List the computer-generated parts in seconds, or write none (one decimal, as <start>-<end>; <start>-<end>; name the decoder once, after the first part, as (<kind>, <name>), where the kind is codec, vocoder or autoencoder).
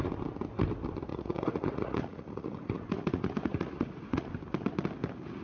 1.1-4.3 (vocoder, Vocos)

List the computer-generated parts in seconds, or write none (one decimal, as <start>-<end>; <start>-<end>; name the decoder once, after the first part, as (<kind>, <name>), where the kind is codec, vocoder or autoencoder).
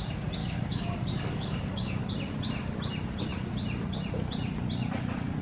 0.4-2.1 (codec, DAC)